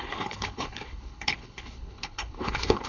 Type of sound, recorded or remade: remade